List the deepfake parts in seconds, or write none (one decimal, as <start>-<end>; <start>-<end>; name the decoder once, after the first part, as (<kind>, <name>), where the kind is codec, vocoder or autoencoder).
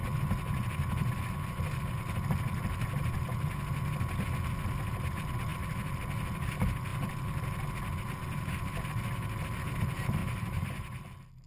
10.2-11.0 (vocoder, BigVGAN v2)